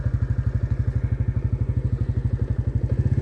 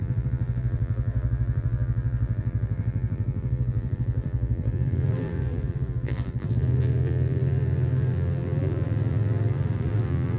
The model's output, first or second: second